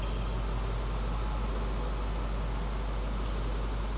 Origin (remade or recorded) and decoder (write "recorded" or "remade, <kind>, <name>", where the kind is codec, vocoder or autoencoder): recorded